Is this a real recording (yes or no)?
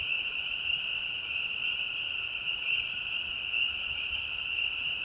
no